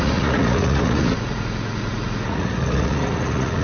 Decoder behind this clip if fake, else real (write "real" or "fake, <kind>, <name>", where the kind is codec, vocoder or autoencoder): fake, vocoder, Vocos